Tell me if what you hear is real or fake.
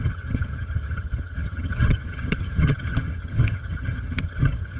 fake